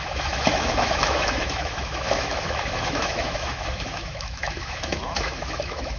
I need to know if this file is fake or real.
fake